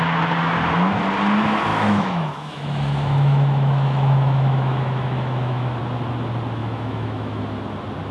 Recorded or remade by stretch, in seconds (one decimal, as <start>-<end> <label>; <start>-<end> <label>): 0.0-1.7 recorded; 1.7-5.8 remade; 5.8-6.6 recorded; 6.6-7.4 remade; 7.4-8.1 recorded